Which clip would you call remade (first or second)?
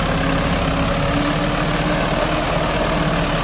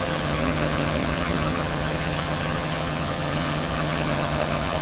second